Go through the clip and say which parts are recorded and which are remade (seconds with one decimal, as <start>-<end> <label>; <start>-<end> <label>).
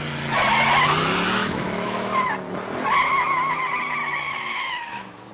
0.0-1.4 recorded; 1.4-2.1 remade; 2.1-4.0 recorded; 4.0-5.3 remade